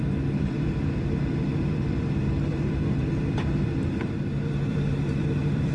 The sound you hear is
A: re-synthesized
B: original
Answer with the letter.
A